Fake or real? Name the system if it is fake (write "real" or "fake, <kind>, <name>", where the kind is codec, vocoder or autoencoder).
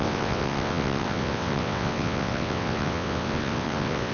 fake, vocoder, WaveNeXt